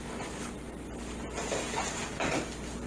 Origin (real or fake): real